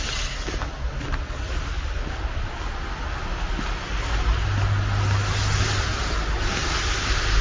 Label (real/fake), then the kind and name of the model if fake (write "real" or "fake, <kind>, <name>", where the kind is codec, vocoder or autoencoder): real